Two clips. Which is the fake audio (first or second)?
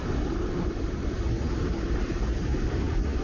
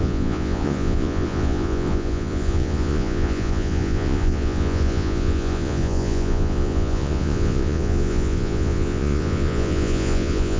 second